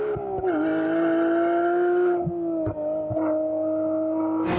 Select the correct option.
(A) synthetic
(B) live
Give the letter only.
B